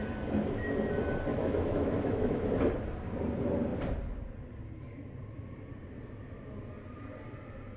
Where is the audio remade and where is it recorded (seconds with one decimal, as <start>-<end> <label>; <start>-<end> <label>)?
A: 0.0-1.3 recorded; 1.3-2.4 remade; 2.4-7.8 recorded